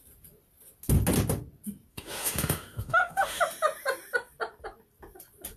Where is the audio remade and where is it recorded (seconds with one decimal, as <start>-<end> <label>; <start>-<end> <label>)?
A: 0.0-1.9 recorded; 1.9-3.4 remade; 3.4-5.6 recorded